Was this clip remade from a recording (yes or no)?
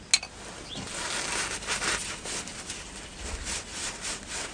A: no